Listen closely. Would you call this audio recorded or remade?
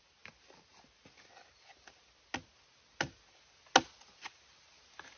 recorded